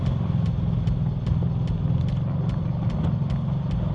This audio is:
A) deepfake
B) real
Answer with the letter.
B